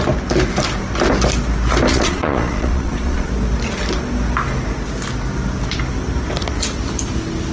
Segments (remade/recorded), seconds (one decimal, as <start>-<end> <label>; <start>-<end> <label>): 0.0-1.9 recorded; 1.9-3.3 remade; 3.3-7.5 recorded